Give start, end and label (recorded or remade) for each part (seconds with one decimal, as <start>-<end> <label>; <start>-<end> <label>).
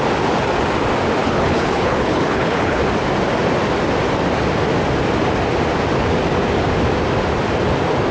0.0-1.2 recorded; 1.2-2.8 remade; 2.8-8.1 recorded